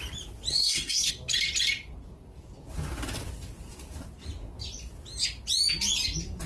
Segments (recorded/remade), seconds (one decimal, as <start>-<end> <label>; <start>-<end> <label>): 0.0-0.5 recorded; 0.5-1.1 remade; 1.1-6.5 recorded